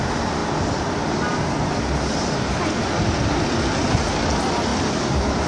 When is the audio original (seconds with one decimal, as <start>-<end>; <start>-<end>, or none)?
0.0-5.5